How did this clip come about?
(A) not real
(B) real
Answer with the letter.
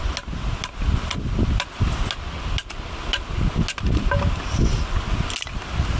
B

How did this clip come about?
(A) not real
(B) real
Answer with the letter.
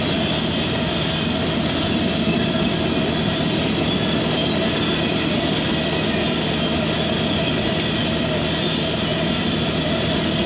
B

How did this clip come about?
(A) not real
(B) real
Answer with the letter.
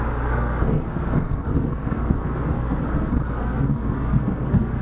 A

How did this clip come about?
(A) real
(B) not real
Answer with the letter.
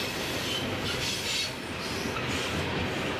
A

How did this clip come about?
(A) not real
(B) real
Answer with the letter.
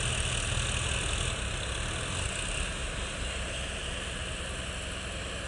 B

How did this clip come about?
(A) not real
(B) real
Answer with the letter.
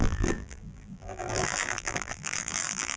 A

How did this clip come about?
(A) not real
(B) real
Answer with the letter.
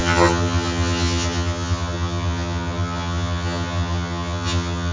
A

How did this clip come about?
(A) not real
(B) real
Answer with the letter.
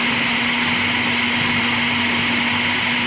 B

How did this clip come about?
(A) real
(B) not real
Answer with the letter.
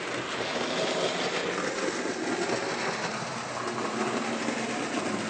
A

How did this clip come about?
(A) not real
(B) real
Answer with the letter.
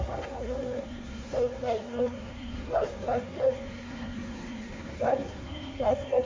A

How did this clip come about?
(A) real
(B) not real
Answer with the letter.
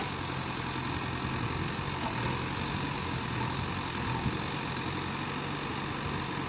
A